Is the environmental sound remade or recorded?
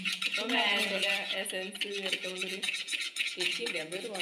remade